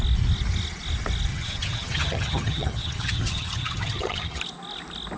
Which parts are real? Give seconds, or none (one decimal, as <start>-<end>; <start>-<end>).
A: 0.0-1.3; 4.4-5.2